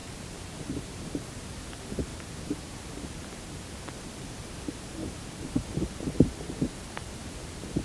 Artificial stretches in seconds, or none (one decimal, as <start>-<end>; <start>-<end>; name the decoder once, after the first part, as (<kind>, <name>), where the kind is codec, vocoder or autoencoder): 0.0-1.2 (vocoder, BigVGAN v2); 2.1-3.7; 5.0-5.7